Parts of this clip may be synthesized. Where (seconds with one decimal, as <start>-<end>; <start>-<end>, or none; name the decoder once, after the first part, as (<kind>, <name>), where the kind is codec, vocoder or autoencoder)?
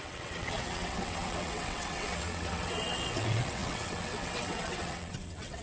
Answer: 0.0-5.6 (vocoder, WaveNeXt)